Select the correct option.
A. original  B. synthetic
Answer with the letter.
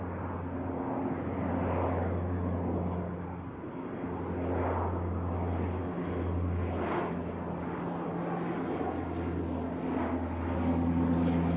A